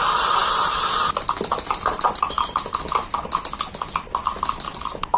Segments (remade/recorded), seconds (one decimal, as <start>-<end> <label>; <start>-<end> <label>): 0.0-5.2 recorded